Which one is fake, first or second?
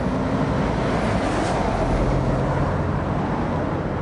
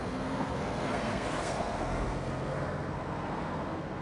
second